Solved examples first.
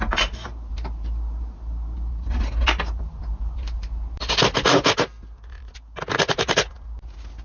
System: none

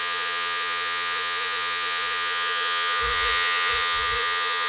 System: vocoder, Vocos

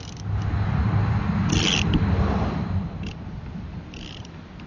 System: none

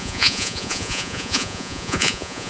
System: vocoder, Vocos